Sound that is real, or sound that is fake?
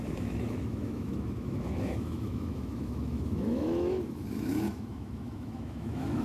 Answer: fake